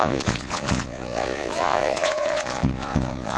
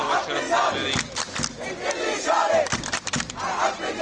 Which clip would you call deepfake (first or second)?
first